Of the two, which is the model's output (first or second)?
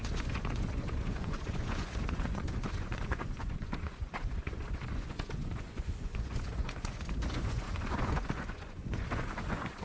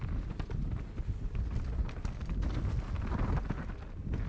first